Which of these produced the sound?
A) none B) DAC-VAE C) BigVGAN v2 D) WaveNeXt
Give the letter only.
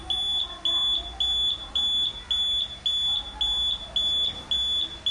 A